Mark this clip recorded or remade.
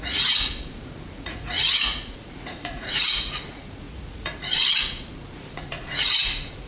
remade